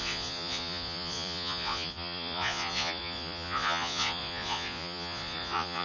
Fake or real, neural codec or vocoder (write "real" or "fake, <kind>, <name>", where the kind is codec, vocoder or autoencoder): fake, vocoder, Vocos